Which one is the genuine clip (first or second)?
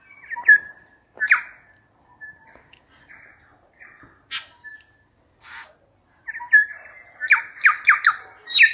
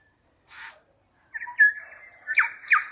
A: first